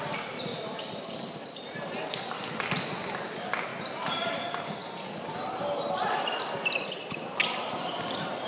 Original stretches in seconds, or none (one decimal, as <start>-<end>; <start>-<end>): 0.0-0.5; 2.0-3.7; 4.4-8.5